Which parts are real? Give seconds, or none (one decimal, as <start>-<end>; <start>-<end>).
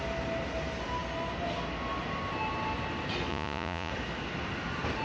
0.0-3.3; 3.9-5.0